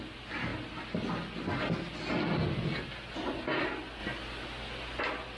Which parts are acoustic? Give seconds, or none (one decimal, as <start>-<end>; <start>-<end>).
0.0-5.4

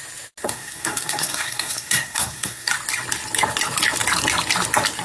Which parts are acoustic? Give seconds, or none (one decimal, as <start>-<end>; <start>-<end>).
0.0-0.4; 2.7-5.0

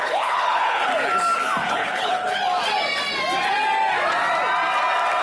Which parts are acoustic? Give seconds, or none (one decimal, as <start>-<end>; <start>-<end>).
0.9-1.7; 2.4-5.2

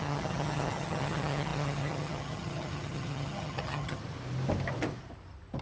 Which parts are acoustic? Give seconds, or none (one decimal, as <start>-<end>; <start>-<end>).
4.0-5.6

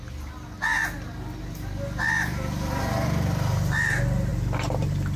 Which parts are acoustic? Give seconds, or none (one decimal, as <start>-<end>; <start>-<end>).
0.0-5.2

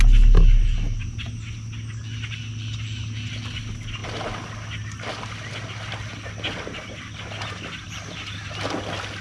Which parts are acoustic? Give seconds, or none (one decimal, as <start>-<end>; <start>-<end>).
0.0-9.2

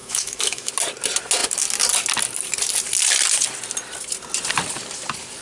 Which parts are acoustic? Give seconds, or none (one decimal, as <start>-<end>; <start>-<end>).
0.7-5.4

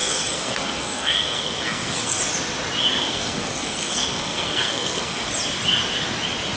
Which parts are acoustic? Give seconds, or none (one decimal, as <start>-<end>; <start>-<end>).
2.2-3.0; 5.3-6.6